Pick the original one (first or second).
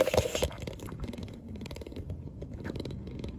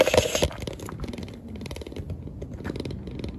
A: second